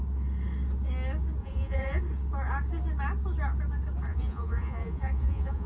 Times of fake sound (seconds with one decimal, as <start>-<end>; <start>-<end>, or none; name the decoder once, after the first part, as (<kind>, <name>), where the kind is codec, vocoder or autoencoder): 1.4-2.0 (vocoder, Vocos); 4.1-5.7